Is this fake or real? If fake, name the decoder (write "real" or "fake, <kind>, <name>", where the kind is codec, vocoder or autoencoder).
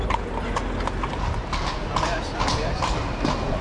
real